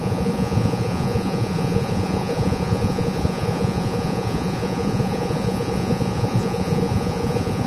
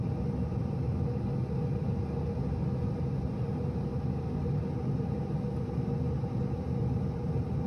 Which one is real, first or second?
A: second